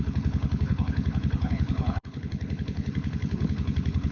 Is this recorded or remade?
remade